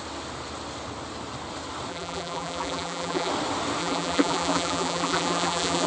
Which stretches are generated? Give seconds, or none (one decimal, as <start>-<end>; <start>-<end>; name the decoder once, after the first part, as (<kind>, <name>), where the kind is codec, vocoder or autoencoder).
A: 1.9-3.3 (vocoder, BigVGAN v2); 3.8-5.9